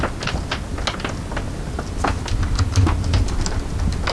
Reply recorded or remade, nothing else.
recorded